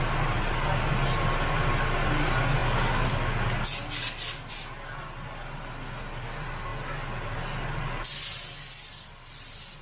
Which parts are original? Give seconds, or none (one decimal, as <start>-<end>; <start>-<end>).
0.0-9.8